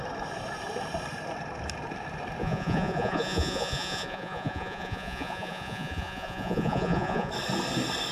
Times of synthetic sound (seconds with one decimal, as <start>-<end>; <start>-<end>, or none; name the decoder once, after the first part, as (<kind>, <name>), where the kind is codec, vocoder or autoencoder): 2.4-7.3 (vocoder, Vocos)